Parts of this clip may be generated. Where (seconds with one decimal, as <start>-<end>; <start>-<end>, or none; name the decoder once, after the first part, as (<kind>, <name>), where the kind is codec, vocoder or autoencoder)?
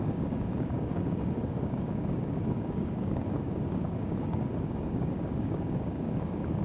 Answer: 0.0-6.6 (codec, DAC)